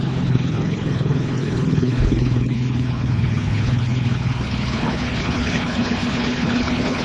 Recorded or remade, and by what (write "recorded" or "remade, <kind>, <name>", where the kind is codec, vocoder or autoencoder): remade, codec, HILCodec